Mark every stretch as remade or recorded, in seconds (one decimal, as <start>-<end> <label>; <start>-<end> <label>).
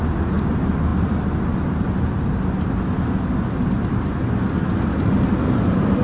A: 0.0-6.0 recorded